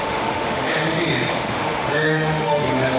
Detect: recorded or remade remade